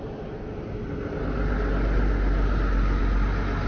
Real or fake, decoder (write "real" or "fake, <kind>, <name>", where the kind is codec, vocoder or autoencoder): real